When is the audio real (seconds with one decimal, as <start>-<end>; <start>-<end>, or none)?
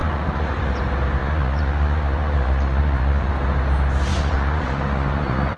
0.7-1.2; 3.3-4.1